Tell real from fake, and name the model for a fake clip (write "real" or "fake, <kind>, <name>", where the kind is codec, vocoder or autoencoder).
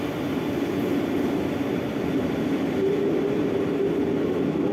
real